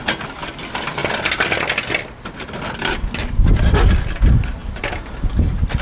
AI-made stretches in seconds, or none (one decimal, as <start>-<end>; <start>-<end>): none

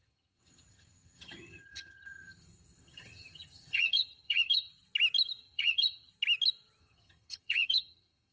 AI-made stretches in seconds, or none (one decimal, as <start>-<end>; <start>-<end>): 0.0-4.7; 5.4-6.1; 6.8-8.3

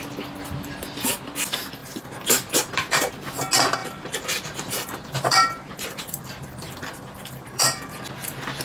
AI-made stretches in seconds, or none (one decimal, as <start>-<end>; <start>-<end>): 1.8-3.1; 3.8-8.0